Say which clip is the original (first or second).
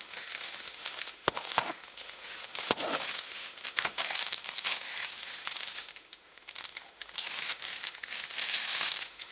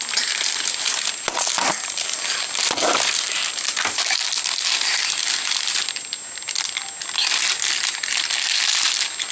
second